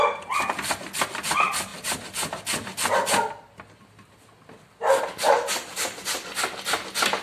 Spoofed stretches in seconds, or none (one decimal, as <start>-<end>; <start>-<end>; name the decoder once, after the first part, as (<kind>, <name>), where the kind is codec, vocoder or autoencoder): none

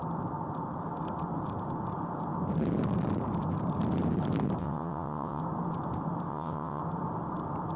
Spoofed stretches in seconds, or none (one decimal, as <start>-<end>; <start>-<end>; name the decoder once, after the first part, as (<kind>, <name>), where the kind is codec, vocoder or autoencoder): 4.6-5.4 (vocoder, WaveNeXt); 6.3-6.8

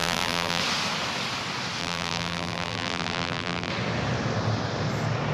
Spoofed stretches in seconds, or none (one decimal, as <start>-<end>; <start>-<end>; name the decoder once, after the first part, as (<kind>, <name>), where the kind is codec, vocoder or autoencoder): 0.0-0.6 (vocoder, BigVGAN v2); 1.8-3.7